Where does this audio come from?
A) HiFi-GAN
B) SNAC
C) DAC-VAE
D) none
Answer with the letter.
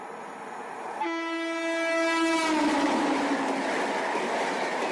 D